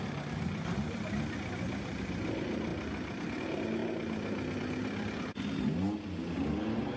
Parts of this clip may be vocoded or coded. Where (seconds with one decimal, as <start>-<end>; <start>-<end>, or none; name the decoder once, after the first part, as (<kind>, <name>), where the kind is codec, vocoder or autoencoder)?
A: none